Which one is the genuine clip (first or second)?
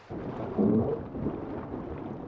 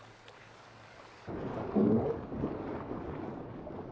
first